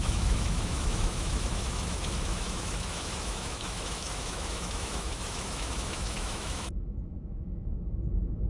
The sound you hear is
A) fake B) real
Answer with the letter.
A